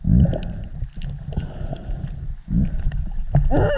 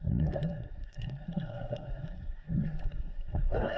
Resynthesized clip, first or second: second